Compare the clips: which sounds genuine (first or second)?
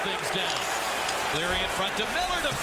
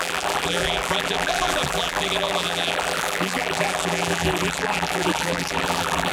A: first